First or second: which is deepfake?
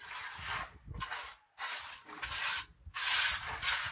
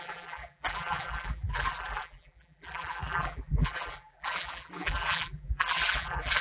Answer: second